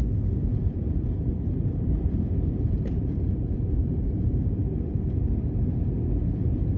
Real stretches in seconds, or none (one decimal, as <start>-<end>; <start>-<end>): 0.0-0.5; 4.6-6.8